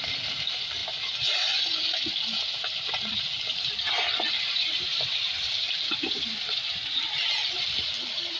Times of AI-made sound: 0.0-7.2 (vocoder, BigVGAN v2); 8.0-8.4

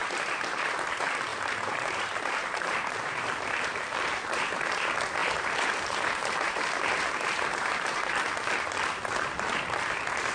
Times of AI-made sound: 0.0-0.7 (vocoder, BigVGAN v2); 1.3-4.5; 5.2-8.0